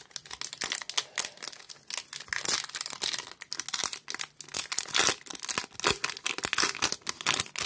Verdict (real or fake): real